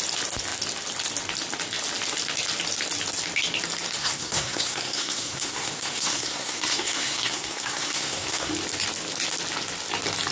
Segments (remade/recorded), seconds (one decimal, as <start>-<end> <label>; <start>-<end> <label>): 0.0-4.0 recorded; 4.0-8.5 remade; 8.5-10.3 recorded